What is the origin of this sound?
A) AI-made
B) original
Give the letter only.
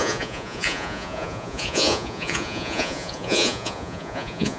A